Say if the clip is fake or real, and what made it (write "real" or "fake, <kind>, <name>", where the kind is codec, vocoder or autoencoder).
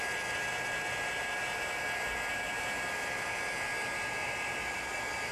real